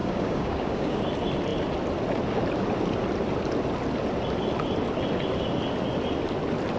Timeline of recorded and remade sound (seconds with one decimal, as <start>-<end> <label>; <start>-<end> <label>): 0.0-1.0 remade; 1.0-6.8 recorded